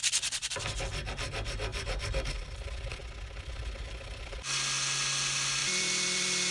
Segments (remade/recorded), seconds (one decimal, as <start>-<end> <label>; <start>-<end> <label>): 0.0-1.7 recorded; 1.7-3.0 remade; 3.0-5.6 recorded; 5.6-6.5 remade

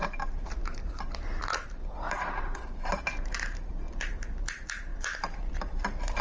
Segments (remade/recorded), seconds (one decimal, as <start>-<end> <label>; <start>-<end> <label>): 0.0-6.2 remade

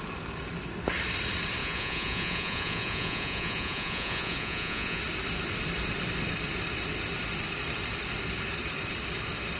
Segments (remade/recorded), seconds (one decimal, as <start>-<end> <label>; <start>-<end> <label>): 0.0-1.6 recorded; 1.6-5.0 remade; 5.0-9.6 recorded

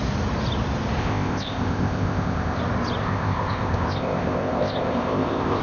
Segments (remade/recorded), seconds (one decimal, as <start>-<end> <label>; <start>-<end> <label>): 0.0-1.0 recorded; 1.0-2.6 remade; 2.6-3.0 recorded; 3.0-5.6 remade